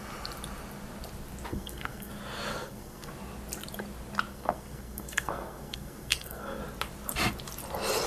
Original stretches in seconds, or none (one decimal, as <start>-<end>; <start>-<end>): 0.0-1.5; 2.1-2.5; 3.1-4.3; 6.6-8.1